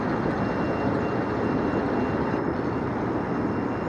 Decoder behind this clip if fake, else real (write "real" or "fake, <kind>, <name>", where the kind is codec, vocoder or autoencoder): real